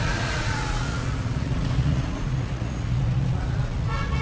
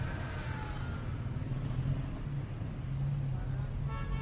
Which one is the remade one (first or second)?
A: first